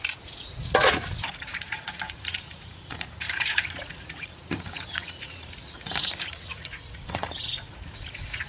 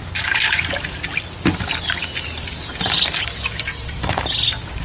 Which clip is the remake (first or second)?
first